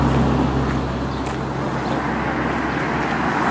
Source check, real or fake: real